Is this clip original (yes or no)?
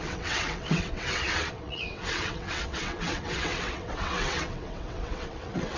no